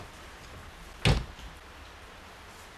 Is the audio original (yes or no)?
yes